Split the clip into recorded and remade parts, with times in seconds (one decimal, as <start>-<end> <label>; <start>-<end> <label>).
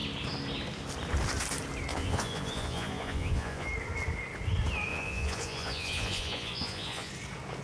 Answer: 0.0-1.9 recorded; 1.9-3.7 remade; 3.7-4.9 recorded; 4.9-7.1 remade; 7.1-7.6 recorded